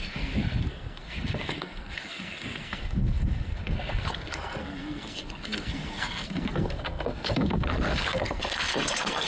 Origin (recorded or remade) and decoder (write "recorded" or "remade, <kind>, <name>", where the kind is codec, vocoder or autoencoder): remade, codec, SNAC